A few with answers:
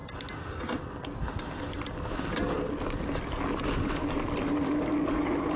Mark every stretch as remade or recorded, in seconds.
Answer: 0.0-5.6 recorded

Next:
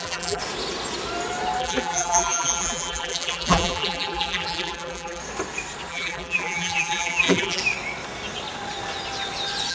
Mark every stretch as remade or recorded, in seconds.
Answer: 0.0-0.4 remade; 0.4-1.6 recorded; 1.6-5.2 remade; 5.2-5.9 recorded; 5.9-7.6 remade; 7.6-9.7 recorded

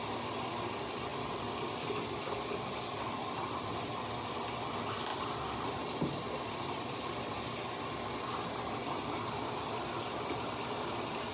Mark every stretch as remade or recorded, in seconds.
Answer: 0.0-1.1 recorded; 1.1-4.0 remade; 4.0-5.1 recorded; 5.1-7.2 remade; 7.2-11.3 recorded

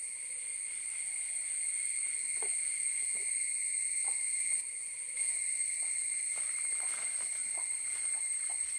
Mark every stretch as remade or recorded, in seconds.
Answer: 0.0-0.5 remade; 0.5-3.7 recorded; 3.7-8.8 remade

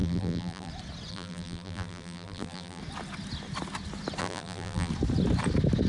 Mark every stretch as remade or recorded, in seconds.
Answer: 0.0-0.7 remade; 0.7-1.1 recorded; 1.1-2.8 remade; 2.8-4.2 recorded; 4.2-4.9 remade; 4.9-5.9 recorded